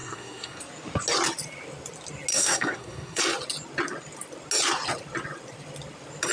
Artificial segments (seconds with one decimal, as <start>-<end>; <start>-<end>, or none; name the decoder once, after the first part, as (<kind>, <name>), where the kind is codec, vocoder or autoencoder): 0.0-0.6 (codec, SNAC); 2.3-3.2